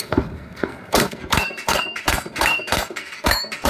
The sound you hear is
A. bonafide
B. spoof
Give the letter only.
B